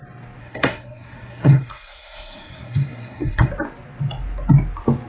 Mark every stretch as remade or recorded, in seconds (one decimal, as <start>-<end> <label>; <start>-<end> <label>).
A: 0.0-0.4 recorded; 0.4-3.5 remade; 3.5-5.1 recorded

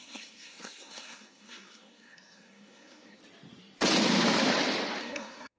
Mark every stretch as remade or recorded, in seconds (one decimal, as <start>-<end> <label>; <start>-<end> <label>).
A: 0.0-3.2 remade; 3.2-5.0 recorded; 5.0-5.6 remade